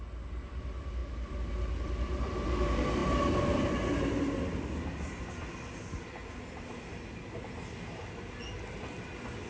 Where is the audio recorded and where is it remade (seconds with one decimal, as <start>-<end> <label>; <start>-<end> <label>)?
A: 0.0-9.5 recorded